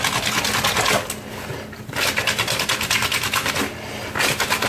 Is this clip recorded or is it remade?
recorded